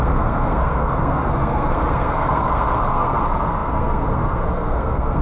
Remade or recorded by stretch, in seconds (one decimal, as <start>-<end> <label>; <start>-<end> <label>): 0.0-5.2 remade